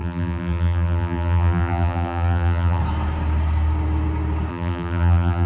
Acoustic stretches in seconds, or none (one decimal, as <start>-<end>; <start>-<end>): 2.8-4.5